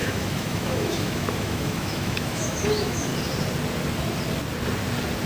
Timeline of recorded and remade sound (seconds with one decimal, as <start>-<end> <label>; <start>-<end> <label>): 0.0-3.1 remade; 3.1-5.3 recorded